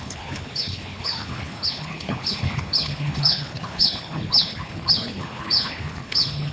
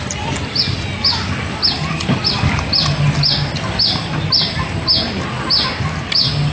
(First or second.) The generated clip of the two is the first